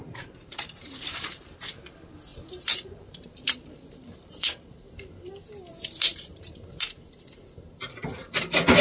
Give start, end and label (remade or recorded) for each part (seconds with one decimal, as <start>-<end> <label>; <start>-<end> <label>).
0.0-1.6 remade; 1.6-2.3 recorded; 2.3-4.7 remade; 4.7-5.7 recorded; 5.7-6.8 remade; 6.8-8.8 recorded